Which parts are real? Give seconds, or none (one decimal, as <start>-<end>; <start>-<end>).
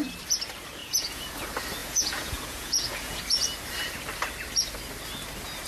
0.0-0.8; 1.4-1.8; 3.2-5.7